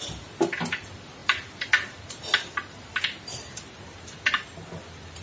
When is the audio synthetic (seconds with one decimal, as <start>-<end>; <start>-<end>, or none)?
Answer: none